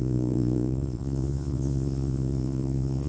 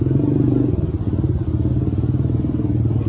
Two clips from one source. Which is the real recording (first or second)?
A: second